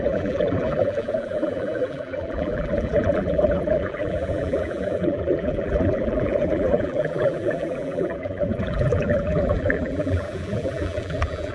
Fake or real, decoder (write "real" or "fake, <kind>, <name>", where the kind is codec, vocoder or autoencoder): fake, vocoder, BigVGAN v2